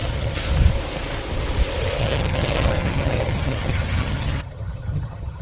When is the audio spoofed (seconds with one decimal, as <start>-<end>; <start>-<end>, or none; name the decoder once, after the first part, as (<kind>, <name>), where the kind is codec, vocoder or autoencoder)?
0.0-0.4 (vocoder, HiFi-GAN); 2.0-5.4